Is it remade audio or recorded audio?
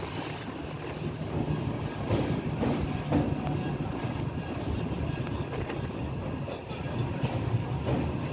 recorded